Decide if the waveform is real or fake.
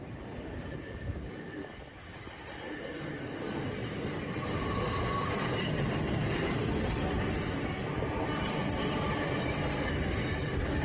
real